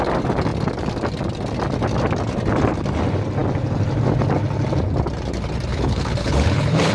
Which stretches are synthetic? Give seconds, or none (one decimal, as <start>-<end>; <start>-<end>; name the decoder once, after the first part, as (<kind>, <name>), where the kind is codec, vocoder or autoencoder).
5.7-6.9 (codec, HILCodec)